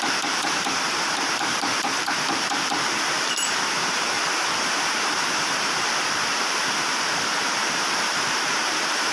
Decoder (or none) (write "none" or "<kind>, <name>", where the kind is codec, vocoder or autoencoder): vocoder, BigVGAN v2